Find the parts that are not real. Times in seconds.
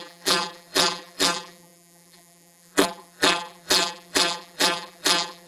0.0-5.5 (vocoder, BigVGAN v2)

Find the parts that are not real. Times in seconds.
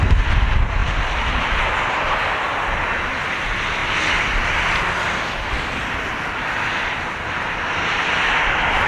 3.8-4.6 (vocoder, BigVGAN v2)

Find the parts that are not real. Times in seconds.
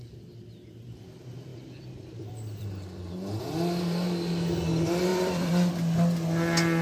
1.5-3.4 (vocoder, BigVGAN v2); 5.1-5.7